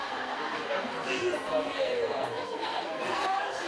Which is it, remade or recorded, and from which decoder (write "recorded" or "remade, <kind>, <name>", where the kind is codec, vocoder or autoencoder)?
remade, codec, SNAC